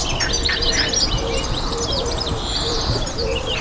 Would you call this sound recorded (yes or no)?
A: no